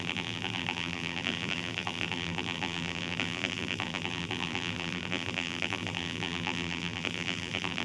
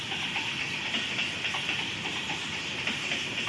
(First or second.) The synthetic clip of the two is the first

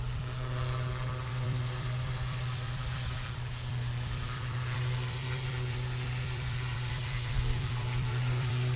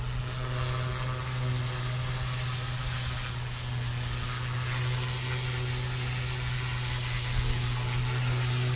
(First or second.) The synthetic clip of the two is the first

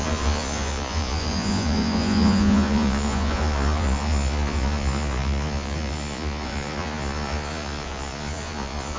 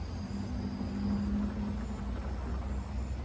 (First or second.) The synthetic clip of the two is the first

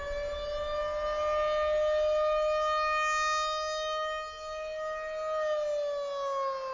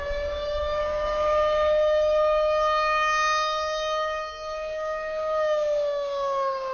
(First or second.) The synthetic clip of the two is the second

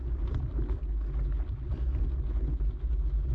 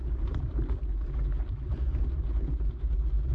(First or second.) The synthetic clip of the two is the second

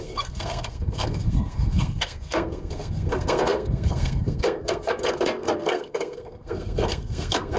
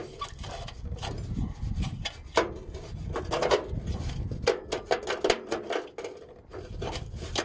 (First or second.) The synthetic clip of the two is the first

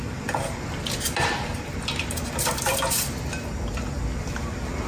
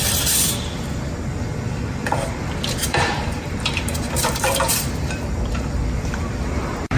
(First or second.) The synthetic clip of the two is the second